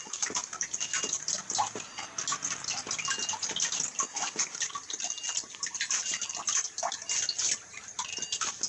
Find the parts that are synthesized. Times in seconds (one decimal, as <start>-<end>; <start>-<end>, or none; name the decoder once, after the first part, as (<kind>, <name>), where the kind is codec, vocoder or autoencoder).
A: 0.4-2.1 (vocoder, BigVGAN v2); 3.2-4.3